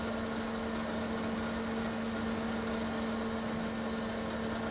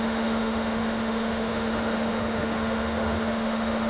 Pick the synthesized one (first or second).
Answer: second